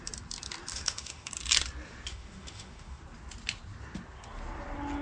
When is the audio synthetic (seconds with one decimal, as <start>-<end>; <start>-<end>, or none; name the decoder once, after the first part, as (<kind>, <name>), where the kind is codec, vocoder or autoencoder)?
0.7-1.3 (autoencoder, DAC-VAE); 2.1-3.0